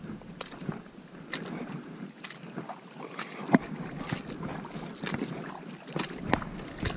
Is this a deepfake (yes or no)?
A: yes